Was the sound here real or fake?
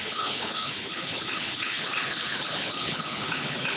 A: fake